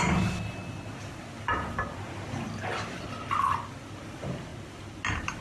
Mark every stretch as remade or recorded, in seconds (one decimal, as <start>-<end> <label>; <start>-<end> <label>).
0.0-5.4 recorded